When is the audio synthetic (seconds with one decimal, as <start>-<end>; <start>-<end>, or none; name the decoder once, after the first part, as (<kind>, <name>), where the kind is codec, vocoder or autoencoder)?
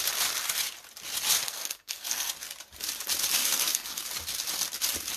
1.4-2.3 (codec, SNAC); 3.4-4.1